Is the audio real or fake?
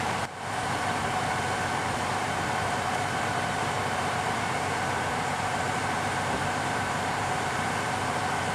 fake